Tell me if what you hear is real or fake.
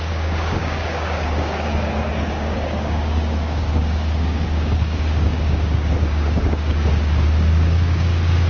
fake